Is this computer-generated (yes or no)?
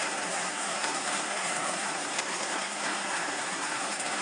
yes